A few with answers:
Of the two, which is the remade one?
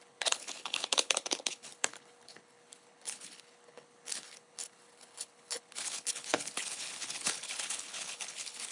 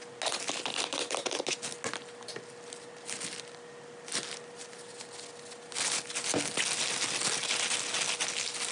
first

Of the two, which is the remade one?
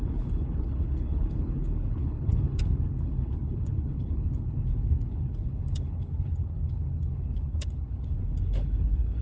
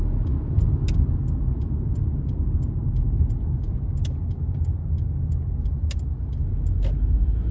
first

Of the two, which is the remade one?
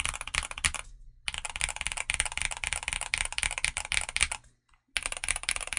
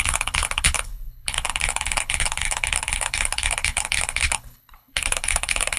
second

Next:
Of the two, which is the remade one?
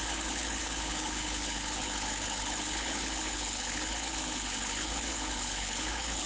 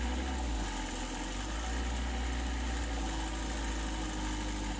first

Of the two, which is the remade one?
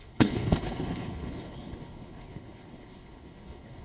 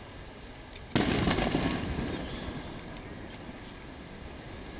first